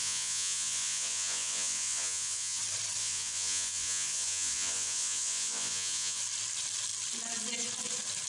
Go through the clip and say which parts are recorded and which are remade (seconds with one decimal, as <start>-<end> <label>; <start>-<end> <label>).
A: 0.0-2.6 remade; 2.6-3.0 recorded; 3.0-6.2 remade; 6.2-8.3 recorded